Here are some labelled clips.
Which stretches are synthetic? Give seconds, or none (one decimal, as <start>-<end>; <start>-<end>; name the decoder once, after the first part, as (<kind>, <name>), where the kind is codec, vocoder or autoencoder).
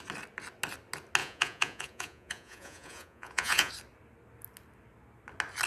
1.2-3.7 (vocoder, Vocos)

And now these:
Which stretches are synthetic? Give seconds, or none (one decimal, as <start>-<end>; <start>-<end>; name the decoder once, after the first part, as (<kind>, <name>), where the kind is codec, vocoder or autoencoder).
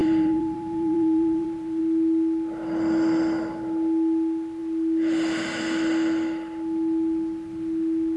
0.0-1.8 (vocoder, BigVGAN v2)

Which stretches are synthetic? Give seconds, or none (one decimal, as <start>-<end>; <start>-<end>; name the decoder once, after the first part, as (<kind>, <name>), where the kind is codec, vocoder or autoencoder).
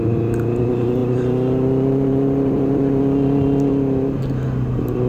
1.0-3.0 (vocoder, BigVGAN v2)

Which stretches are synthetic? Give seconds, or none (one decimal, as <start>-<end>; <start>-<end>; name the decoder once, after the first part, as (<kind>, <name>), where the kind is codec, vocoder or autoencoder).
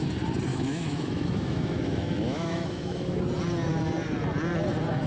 0.5-3.2 (autoencoder, DAC-VAE)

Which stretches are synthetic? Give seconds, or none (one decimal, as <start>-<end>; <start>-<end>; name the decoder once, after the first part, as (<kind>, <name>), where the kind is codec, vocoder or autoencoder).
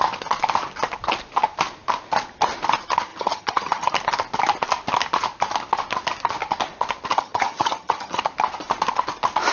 3.1-3.9 (vocoder, HiFi-GAN); 7.1-8.2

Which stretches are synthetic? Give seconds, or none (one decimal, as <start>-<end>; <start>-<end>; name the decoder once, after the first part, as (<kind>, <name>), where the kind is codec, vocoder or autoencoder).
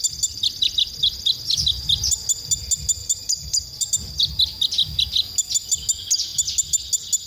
3.0-3.9 (vocoder, BigVGAN v2)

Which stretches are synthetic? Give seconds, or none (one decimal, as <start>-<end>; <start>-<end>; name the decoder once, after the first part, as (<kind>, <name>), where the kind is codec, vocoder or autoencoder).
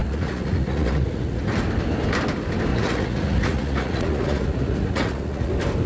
0.0-1.4 (vocoder, Vocos); 2.7-5.5